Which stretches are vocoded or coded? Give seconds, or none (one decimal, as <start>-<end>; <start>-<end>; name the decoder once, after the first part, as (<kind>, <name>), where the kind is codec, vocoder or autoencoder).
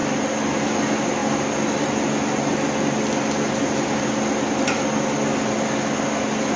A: none